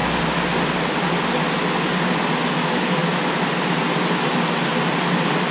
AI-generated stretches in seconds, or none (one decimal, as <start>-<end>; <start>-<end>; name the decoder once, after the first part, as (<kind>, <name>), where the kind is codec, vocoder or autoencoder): 3.0-4.1 (vocoder, BigVGAN v2)